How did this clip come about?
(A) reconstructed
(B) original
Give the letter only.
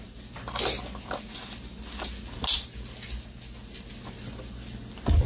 B